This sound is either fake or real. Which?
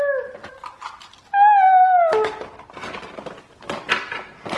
real